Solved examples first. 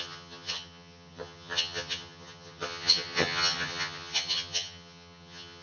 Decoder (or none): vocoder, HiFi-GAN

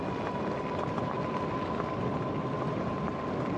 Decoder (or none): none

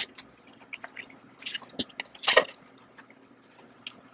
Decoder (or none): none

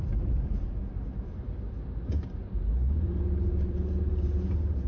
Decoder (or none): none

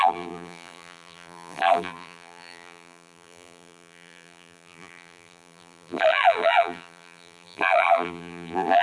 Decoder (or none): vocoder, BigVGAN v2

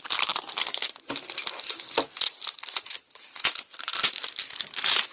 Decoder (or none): none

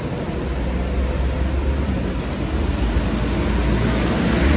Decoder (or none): none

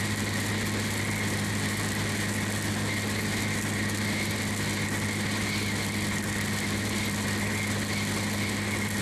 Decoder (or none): none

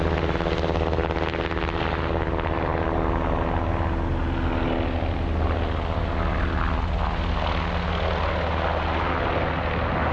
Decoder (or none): none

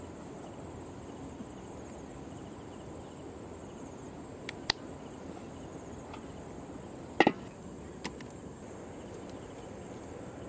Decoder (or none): none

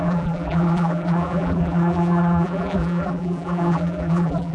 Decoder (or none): vocoder, BigVGAN v2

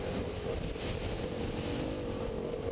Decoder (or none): none